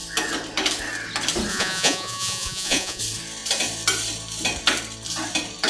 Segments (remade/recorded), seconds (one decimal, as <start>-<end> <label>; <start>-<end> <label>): 0.0-1.5 recorded; 1.5-3.0 remade; 3.0-5.7 recorded